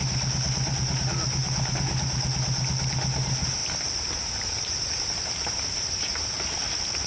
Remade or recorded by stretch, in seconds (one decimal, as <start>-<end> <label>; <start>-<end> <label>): 0.0-3.6 recorded; 3.6-5.8 remade; 5.8-7.1 recorded